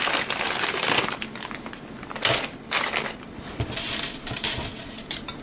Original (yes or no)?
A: yes